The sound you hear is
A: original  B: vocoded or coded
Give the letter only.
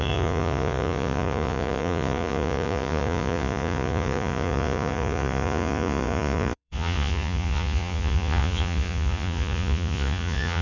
B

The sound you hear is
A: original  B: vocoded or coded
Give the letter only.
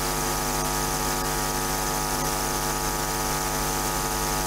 A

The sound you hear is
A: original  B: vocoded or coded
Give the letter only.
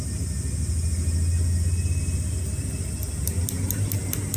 A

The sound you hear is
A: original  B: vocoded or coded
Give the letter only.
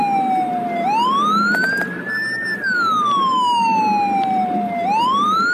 A